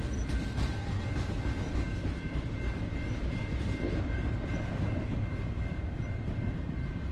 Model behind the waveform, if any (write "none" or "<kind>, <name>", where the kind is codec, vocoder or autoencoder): none